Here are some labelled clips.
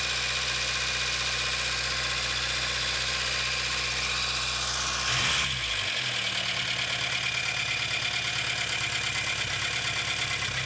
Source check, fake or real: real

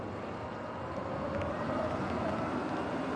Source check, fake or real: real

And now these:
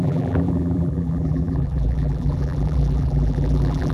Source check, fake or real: fake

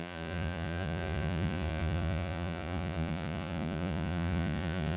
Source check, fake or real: fake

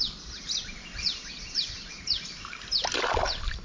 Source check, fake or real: real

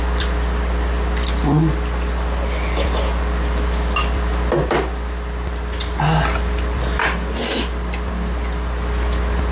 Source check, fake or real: real